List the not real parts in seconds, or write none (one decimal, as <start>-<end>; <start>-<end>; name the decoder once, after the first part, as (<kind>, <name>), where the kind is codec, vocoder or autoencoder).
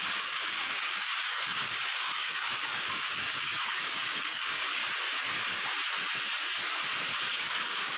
0.0-4.8 (codec, DAC); 7.2-8.0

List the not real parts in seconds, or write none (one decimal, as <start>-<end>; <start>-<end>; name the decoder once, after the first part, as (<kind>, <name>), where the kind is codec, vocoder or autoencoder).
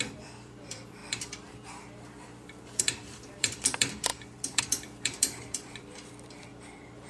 0.0-7.1 (vocoder, BigVGAN v2)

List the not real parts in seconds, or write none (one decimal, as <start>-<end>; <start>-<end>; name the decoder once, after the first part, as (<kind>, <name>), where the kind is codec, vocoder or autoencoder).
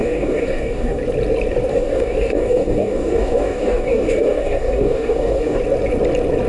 0.0-1.0 (codec, DAC); 1.7-5.6